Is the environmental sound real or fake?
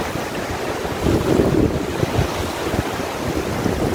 real